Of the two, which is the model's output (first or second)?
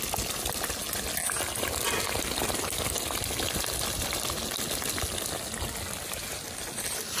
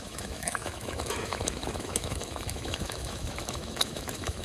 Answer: second